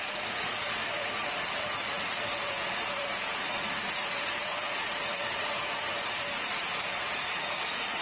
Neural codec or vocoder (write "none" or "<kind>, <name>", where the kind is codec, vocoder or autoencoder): vocoder, Vocos